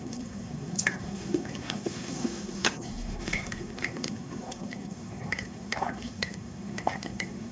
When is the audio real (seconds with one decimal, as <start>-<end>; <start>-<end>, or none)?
none